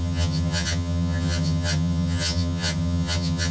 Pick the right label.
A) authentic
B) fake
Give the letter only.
B